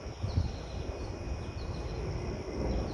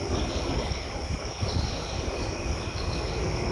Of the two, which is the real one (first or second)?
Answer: first